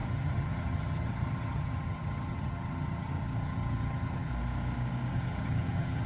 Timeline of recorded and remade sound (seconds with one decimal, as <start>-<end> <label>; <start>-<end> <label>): 0.0-4.3 remade; 4.3-5.1 recorded; 5.1-6.1 remade